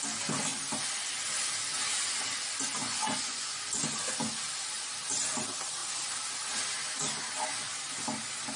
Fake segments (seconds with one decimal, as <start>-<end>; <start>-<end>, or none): 2.8-3.6